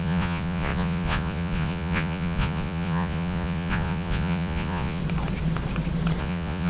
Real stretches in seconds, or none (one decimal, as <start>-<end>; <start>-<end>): 5.0-6.2